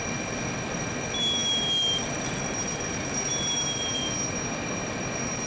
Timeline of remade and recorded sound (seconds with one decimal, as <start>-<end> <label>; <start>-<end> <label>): 0.0-5.5 recorded